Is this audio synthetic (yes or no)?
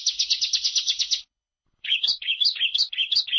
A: yes